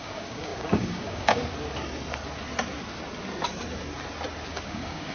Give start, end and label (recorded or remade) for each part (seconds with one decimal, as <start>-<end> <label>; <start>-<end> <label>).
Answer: 0.0-1.4 remade; 1.4-4.5 recorded; 4.5-5.1 remade

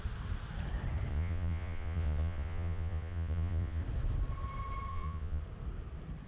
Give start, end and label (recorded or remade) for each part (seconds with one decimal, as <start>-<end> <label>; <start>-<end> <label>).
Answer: 0.0-1.1 recorded; 1.1-3.8 remade; 3.8-4.9 recorded; 4.9-5.4 remade; 5.4-6.3 recorded

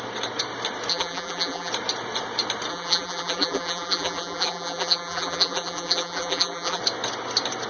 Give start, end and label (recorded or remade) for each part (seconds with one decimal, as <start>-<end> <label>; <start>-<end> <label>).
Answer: 0.0-0.9 recorded; 0.9-1.7 remade; 1.7-2.7 recorded; 2.7-6.8 remade; 6.8-7.7 recorded

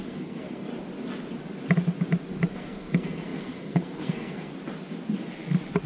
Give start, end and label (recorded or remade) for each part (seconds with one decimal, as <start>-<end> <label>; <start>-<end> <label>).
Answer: 0.0-0.7 remade; 0.7-2.5 recorded; 2.5-4.5 remade; 4.5-5.9 recorded

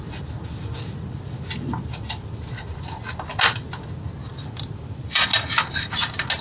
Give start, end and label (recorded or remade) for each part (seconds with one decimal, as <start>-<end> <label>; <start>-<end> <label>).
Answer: 0.0-3.3 remade; 3.3-4.3 recorded; 4.3-5.3 remade; 5.3-6.4 recorded

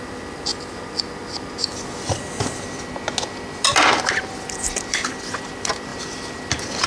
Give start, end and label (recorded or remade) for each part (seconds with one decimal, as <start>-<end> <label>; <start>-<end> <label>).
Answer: 0.0-0.5 remade; 0.5-3.6 recorded; 3.6-6.9 remade